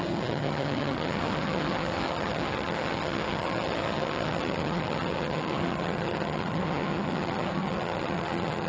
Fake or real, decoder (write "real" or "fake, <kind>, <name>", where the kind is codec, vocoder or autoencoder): fake, vocoder, HiFi-GAN